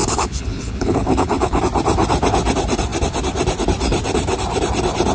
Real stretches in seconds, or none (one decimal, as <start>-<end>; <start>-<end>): 1.6-5.1